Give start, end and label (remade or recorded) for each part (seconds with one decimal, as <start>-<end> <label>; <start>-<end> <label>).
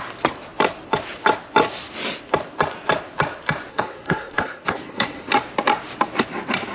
0.0-3.7 recorded; 3.7-5.3 remade; 5.3-6.7 recorded